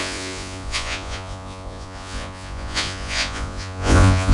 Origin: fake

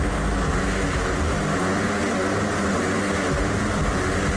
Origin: real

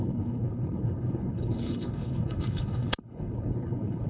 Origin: fake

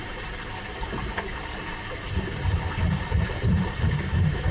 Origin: fake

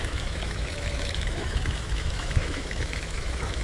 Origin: fake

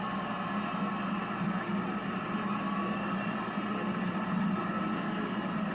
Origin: real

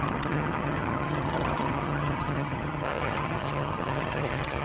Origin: fake